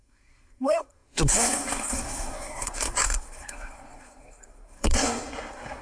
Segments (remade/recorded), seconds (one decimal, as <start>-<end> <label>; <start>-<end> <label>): 0.0-5.8 remade